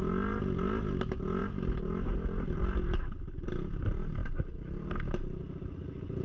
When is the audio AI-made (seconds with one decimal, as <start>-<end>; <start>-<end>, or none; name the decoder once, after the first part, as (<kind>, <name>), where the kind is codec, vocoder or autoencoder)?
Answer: none